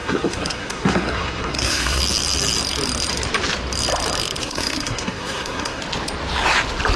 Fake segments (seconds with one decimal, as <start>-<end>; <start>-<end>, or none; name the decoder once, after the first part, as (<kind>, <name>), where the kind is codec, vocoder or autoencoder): 0.0-2.0 (codec, SNAC); 4.4-5.8